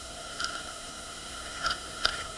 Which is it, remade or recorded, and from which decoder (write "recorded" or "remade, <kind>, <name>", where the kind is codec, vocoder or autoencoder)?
remade, codec, SNAC